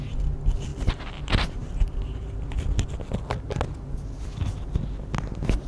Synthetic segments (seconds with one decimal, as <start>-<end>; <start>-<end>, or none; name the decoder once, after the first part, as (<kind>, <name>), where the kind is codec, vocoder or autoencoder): none